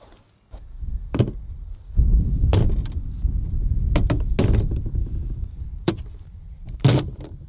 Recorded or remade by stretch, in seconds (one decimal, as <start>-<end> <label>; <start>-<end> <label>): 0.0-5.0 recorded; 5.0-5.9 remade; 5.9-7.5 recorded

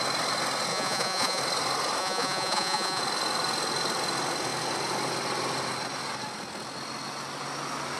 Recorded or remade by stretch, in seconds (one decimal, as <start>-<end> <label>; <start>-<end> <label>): 0.0-0.7 recorded; 0.7-1.4 remade; 1.4-2.0 recorded; 2.0-3.0 remade; 3.0-8.0 recorded

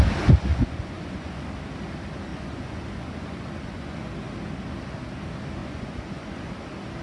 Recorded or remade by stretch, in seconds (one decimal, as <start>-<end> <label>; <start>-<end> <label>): 0.0-0.5 recorded; 0.5-1.5 remade; 1.5-2.3 recorded; 2.3-4.1 remade; 4.1-5.6 recorded; 5.6-6.5 remade; 6.5-7.0 recorded